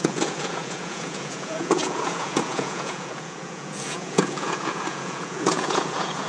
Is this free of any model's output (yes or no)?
no